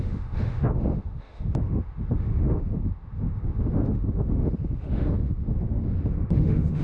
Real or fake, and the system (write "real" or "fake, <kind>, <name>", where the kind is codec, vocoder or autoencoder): fake, autoencoder, DAC-VAE